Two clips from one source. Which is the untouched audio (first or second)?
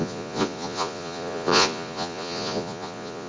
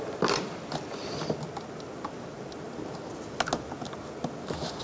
second